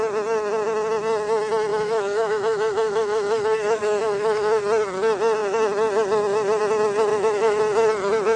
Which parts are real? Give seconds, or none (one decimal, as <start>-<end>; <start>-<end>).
0.0-1.7; 4.6-7.1; 7.6-8.4